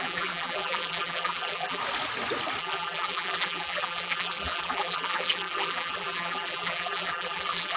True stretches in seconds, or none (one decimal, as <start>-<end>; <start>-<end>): 1.8-2.6